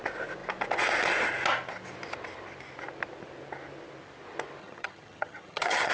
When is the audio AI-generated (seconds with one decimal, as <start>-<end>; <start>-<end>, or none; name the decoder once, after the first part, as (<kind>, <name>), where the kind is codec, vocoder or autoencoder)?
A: 4.6-5.9 (vocoder, HiFi-GAN)